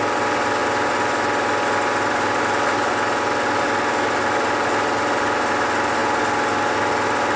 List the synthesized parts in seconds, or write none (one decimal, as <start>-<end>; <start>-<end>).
none